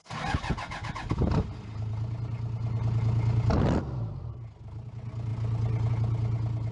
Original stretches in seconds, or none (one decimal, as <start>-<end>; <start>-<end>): 0.0-6.7